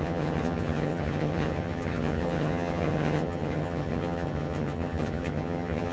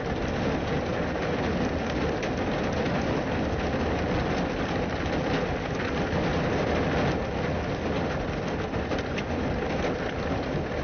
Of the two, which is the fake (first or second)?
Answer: first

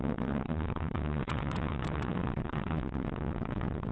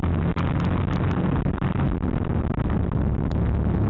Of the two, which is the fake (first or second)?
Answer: first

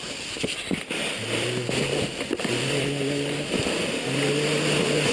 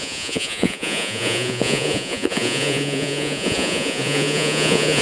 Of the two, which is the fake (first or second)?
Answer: second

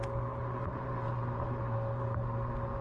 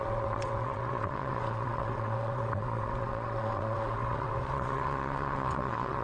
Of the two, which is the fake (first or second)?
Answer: second